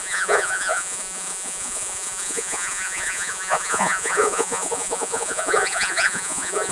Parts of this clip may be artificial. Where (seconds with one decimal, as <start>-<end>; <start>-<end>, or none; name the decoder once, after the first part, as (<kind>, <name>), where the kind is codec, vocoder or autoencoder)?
0.0-6.7 (vocoder, Vocos)